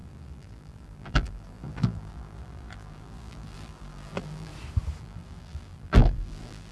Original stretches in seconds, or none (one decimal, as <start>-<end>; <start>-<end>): 4.5-5.0